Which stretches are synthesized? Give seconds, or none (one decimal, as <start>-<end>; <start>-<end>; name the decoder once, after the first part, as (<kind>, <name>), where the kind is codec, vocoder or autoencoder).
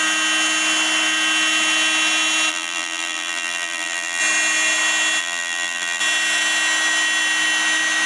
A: 2.5-4.2 (vocoder, BigVGAN v2); 5.2-6.0